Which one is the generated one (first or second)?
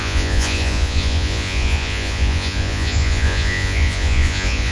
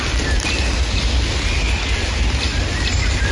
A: first